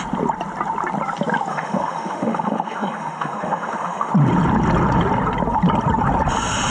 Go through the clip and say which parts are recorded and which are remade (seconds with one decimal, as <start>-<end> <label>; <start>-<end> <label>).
0.0-1.5 recorded; 1.5-4.1 remade; 4.1-6.7 recorded